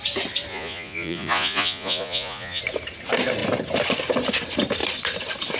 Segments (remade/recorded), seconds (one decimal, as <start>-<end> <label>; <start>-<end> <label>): 0.0-0.5 recorded; 0.5-2.6 remade; 2.6-5.6 recorded